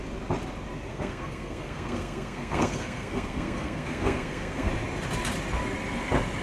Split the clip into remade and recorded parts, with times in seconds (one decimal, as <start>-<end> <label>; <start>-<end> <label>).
0.0-0.9 recorded; 0.9-4.7 remade; 4.7-6.4 recorded